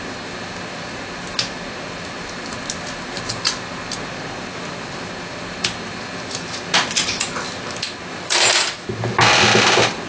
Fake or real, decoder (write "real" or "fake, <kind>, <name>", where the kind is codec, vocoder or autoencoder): real